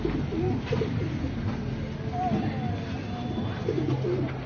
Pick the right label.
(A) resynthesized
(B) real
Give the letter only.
B